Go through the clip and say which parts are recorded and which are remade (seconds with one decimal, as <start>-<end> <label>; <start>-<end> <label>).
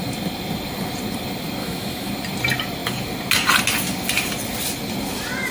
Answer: 0.0-1.6 recorded; 1.6-2.1 remade; 2.1-5.5 recorded